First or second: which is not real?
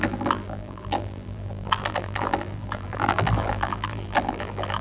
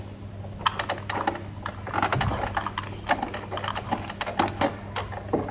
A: first